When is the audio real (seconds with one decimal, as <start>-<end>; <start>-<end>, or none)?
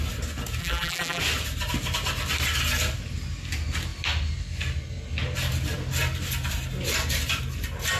0.0-0.6; 1.2-8.0